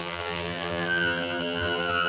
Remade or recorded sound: remade